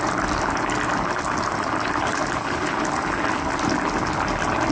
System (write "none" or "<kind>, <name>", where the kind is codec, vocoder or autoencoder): none